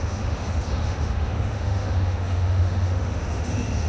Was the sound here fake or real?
fake